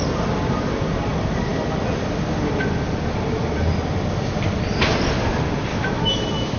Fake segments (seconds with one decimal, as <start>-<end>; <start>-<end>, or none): 5.7-6.6